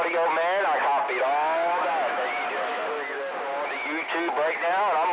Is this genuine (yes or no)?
yes